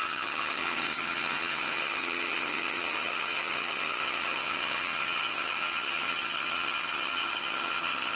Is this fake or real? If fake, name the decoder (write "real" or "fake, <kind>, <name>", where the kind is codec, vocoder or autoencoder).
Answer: fake, vocoder, HiFi-GAN